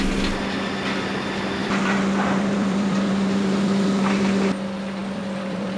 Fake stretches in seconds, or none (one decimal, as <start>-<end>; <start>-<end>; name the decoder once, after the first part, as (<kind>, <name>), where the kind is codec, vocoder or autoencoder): 1.6-4.2 (vocoder, BigVGAN v2); 5.0-5.8